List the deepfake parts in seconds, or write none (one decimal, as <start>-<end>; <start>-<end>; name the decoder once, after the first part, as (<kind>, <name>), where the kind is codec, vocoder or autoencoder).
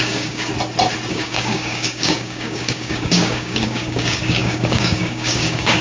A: 0.0-0.5 (codec, DAC); 1.1-5.8